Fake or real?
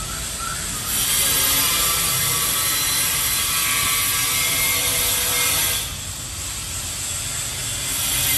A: real